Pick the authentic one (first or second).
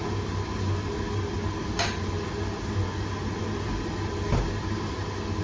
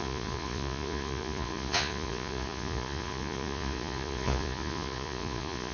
first